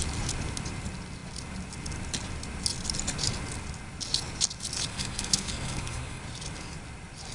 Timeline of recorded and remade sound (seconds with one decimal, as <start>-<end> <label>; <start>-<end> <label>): 0.0-4.9 recorded; 4.9-6.2 remade; 6.2-7.3 recorded